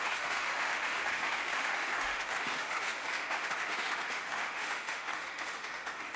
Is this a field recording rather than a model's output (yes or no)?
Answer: no